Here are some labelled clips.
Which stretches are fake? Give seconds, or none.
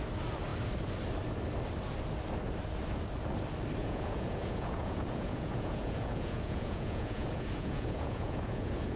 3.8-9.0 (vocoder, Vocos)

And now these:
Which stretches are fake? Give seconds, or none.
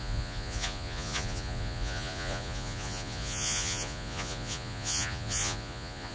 0.0-6.1 (vocoder, Vocos)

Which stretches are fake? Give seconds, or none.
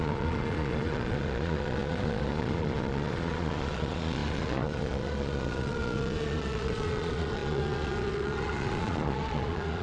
0.0-9.8 (vocoder, Vocos)